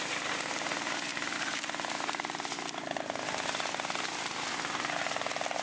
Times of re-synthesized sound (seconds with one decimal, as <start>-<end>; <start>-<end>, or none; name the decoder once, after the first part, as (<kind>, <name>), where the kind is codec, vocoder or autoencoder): none